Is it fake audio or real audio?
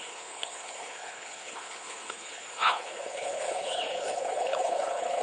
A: fake